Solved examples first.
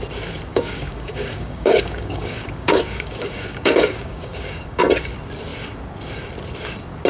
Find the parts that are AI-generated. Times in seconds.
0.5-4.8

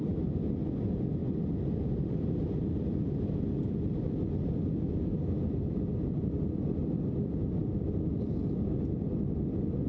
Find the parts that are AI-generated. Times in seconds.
none

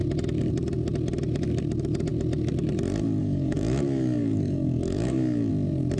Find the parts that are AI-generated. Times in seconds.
3.2-5.5

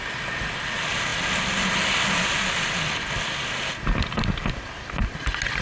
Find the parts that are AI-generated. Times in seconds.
none

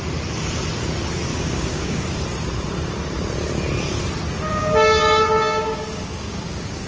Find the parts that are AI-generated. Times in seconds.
1.3-2.1; 4.5-6.9

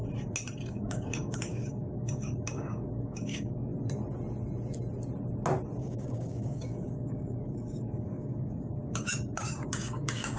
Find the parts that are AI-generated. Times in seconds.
0.7-3.7; 5.8-10.4